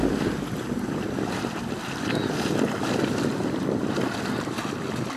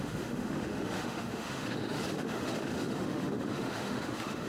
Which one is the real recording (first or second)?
first